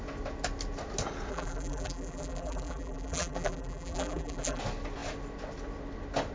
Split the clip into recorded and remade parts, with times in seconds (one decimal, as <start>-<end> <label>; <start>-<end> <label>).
0.0-1.3 recorded; 1.3-4.6 remade; 4.6-6.3 recorded